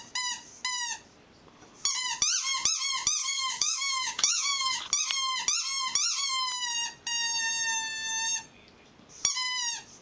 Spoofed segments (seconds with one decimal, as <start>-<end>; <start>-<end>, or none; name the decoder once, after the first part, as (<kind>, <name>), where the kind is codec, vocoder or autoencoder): 3.2-4.8 (codec, DAC)

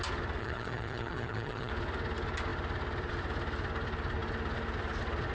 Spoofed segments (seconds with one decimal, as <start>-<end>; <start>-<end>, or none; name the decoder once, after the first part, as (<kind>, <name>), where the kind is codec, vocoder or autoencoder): 0.4-1.7 (vocoder, HiFi-GAN)

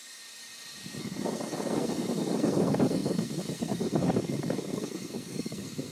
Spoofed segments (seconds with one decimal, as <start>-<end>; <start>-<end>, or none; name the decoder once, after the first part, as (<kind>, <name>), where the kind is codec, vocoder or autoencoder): 1.0-5.9 (codec, SNAC)

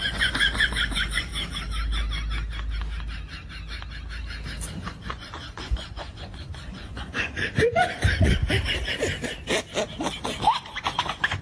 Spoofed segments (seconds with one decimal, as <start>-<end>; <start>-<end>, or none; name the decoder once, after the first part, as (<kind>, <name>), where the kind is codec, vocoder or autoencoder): 0.0-1.3 (vocoder, Vocos); 4.7-8.4; 10.7-11.4

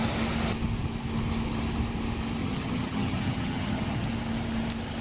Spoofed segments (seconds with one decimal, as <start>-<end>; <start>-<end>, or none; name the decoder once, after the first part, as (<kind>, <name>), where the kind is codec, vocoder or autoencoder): 2.4-4.1 (vocoder, HiFi-GAN)

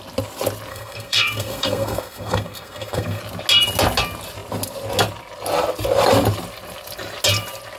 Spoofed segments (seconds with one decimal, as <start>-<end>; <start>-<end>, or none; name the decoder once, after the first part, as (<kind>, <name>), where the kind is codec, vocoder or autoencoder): 0.7-3.2 (codec, SNAC)

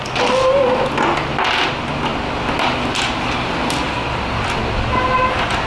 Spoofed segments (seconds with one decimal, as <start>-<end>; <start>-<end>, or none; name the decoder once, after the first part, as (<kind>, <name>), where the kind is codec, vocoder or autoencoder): none